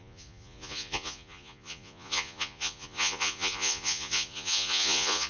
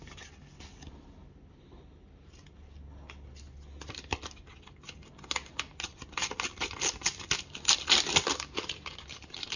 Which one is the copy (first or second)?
first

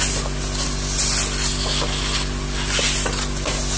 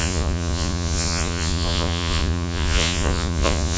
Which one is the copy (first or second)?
second